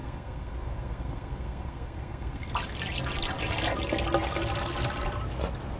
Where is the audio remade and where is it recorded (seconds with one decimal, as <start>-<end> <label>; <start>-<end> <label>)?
0.0-2.5 remade; 2.5-5.8 recorded

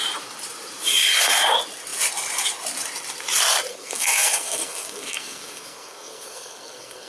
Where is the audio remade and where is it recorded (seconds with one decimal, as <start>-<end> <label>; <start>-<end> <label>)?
0.0-3.7 recorded; 3.7-7.1 remade

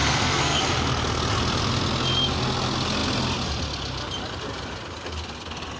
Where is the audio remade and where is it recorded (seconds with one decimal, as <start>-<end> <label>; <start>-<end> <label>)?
0.0-0.6 remade; 0.6-5.8 recorded

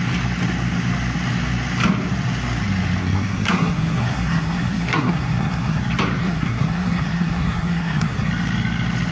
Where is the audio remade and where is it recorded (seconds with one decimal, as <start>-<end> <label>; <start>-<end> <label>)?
0.0-3.0 recorded; 3.0-5.8 remade; 5.8-6.2 recorded; 6.2-8.3 remade; 8.3-9.1 recorded

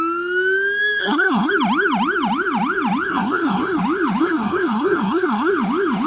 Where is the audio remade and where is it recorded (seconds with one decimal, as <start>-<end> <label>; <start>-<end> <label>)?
0.0-1.0 recorded; 1.0-1.5 remade; 1.5-3.1 recorded; 3.1-3.8 remade; 3.8-4.2 recorded; 4.2-5.5 remade; 5.5-6.1 recorded

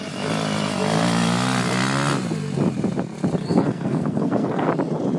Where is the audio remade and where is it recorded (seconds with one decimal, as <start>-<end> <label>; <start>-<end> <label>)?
0.0-3.4 recorded; 3.4-4.7 remade; 4.7-5.2 recorded